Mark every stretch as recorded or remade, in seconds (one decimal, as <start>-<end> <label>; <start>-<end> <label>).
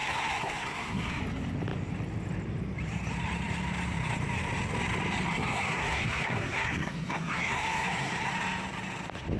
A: 0.0-1.2 remade; 1.2-5.3 recorded; 5.3-8.3 remade; 8.3-9.4 recorded